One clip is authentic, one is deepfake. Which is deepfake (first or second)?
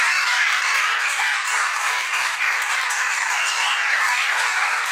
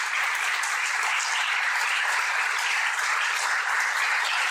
first